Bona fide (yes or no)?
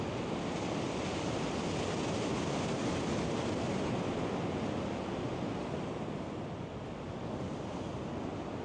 yes